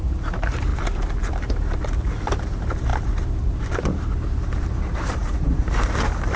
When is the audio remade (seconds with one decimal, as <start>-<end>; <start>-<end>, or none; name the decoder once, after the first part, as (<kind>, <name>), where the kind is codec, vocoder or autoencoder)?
0.0-0.7 (vocoder, BigVGAN v2); 1.3-6.4